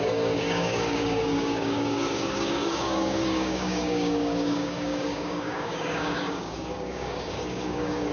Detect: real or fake fake